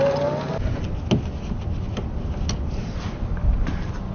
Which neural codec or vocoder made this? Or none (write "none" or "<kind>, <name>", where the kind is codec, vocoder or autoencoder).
none